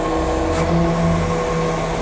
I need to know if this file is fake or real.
real